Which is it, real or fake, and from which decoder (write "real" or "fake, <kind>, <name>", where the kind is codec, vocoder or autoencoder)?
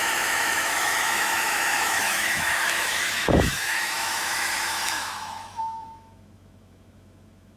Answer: fake, autoencoder, DAC-VAE